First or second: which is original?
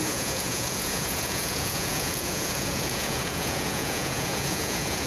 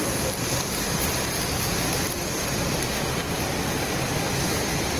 second